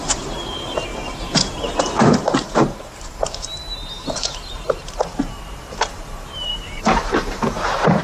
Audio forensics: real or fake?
fake